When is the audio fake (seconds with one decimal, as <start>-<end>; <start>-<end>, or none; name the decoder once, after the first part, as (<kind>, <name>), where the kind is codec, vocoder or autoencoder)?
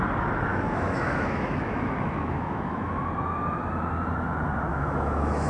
0.5-3.1 (autoencoder, DAC-VAE); 4.7-5.5